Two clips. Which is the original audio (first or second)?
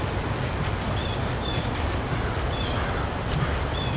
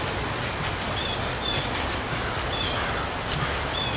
second